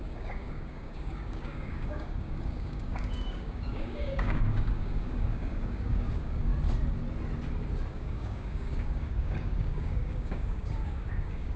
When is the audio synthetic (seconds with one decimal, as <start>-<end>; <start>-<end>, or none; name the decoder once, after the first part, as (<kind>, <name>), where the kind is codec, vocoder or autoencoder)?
0.0-6.5 (codec, DAC); 7.9-11.6